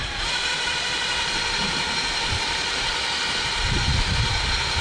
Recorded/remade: remade